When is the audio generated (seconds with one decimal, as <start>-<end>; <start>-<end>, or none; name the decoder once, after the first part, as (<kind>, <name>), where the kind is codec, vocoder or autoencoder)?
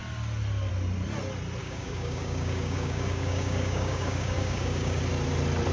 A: 1.6-5.0 (codec, DAC)